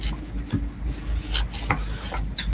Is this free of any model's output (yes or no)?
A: yes